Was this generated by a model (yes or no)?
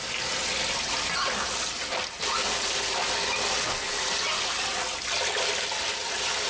no